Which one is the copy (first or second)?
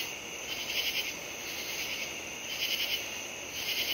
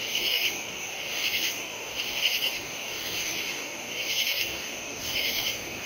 second